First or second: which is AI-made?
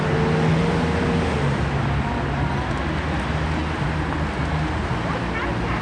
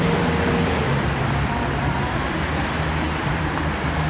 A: second